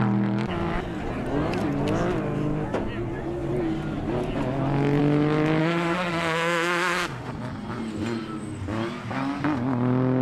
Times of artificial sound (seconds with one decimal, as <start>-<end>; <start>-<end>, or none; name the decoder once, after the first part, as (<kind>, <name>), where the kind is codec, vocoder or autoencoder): 5.6-7.3 (autoencoder, DAC-VAE)